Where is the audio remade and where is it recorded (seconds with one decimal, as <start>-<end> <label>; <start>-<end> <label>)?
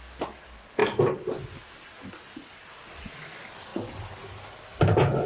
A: 0.0-5.3 recorded